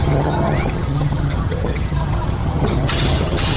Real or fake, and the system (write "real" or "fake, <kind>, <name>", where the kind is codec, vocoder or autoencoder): fake, vocoder, HiFi-GAN